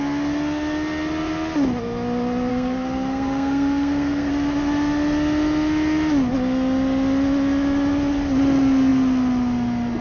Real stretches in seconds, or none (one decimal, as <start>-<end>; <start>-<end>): 0.0-2.5; 4.3-10.0